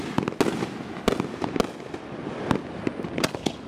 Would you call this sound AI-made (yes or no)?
no